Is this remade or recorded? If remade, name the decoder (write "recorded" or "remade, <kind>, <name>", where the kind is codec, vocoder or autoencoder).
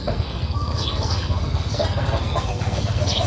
remade, codec, SNAC